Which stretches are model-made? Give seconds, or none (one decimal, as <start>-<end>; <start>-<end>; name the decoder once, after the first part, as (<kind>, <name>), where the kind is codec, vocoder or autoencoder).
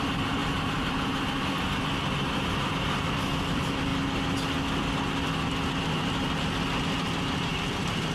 0.4-1.2 (vocoder, BigVGAN v2); 7.5-8.1